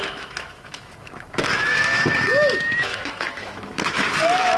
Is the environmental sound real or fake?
fake